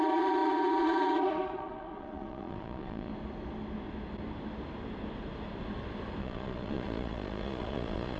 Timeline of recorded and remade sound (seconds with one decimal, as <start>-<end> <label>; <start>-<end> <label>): 0.0-3.1 remade; 3.1-6.2 recorded; 6.2-8.2 remade